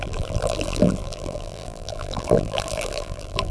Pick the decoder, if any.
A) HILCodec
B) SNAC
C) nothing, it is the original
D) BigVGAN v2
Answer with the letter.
D